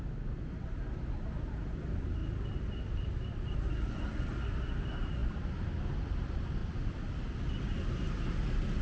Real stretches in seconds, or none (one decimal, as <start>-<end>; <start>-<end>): 0.0-2.2; 4.4-5.2; 5.8-6.6; 7.6-8.8

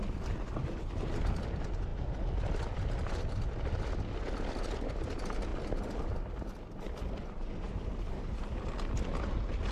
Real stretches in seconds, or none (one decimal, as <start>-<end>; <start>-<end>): 0.0-9.7

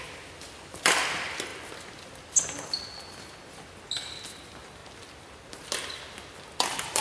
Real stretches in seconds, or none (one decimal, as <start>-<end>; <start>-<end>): 0.0-7.0

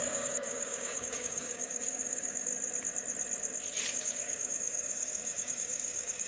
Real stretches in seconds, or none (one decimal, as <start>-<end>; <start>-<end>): 2.5-3.9

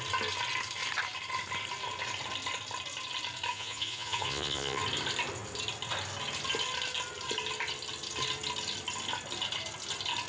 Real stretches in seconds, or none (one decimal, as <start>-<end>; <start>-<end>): 0.0-3.5; 4.8-10.3

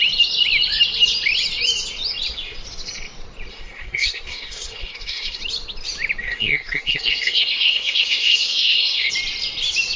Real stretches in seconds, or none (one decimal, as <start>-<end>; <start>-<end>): 0.0-3.5; 5.4-6.2; 9.1-10.0

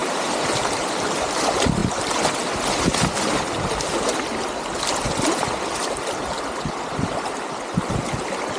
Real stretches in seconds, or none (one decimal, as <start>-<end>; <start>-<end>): 1.4-8.6

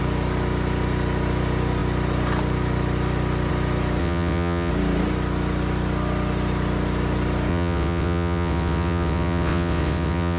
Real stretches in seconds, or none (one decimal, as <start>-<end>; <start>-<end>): 0.0-4.0; 4.7-7.5